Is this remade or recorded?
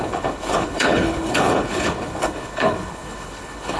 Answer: remade